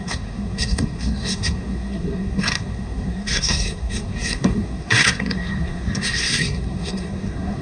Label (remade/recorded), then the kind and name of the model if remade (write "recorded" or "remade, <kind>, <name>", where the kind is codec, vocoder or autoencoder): remade, codec, SNAC